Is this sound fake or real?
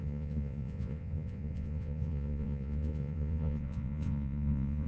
fake